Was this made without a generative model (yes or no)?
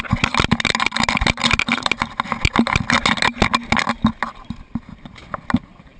yes